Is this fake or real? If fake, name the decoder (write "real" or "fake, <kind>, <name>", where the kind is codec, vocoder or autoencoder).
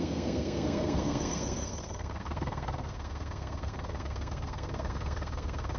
fake, codec, SNAC